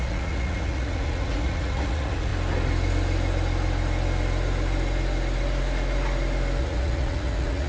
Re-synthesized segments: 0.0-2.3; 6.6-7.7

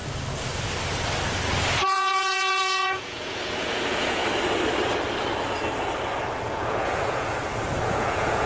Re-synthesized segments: 1.8-4.2; 6.4-8.5